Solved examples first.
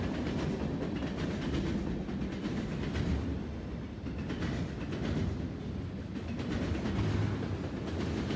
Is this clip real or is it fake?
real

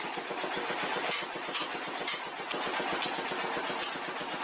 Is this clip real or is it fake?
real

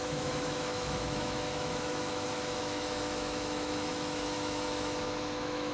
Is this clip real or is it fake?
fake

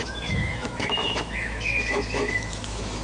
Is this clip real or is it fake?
fake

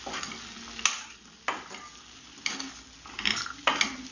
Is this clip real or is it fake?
real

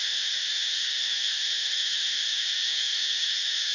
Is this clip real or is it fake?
fake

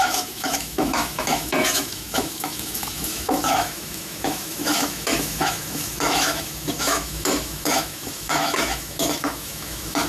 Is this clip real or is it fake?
fake